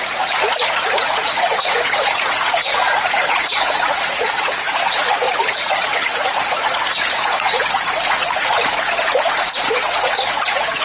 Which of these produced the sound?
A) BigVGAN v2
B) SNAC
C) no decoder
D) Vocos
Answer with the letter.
D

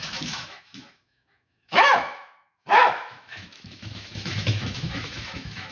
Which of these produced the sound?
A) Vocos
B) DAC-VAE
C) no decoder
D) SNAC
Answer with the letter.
B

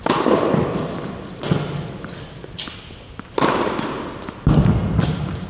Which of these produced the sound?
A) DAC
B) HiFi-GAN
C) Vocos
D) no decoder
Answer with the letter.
D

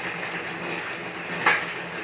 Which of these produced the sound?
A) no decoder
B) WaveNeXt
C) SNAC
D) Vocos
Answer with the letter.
A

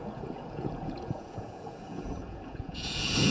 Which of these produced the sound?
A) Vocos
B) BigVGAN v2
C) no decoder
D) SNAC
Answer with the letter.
A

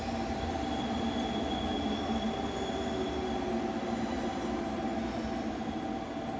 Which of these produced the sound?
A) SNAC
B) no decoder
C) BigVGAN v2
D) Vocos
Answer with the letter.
B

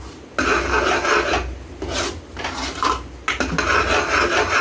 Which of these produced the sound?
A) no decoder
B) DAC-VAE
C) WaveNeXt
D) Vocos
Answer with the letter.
A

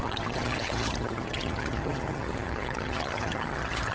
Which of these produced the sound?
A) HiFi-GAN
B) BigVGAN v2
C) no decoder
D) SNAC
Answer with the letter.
A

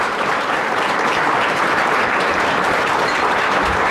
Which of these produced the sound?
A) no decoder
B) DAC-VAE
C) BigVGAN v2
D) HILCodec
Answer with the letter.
C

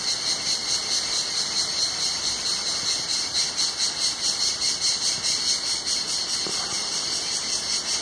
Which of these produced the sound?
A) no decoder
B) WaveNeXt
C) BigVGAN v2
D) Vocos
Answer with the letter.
A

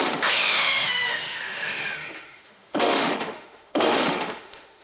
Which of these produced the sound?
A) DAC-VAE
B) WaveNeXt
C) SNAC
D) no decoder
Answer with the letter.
A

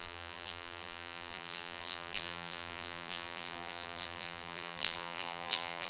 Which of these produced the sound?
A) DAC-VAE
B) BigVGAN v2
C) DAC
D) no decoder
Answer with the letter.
B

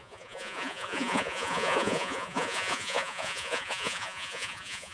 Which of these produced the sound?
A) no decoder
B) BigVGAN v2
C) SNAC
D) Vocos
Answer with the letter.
D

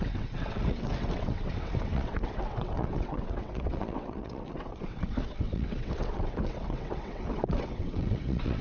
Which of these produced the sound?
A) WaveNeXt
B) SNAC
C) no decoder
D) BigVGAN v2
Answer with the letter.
A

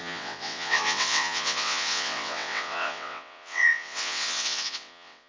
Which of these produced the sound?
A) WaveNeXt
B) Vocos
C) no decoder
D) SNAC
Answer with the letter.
A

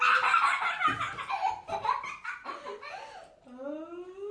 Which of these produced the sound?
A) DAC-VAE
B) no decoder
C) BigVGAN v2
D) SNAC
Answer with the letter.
B